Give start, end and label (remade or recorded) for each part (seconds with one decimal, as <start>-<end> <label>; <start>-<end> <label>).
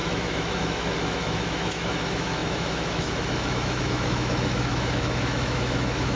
0.0-6.2 remade